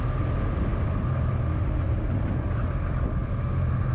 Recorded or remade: recorded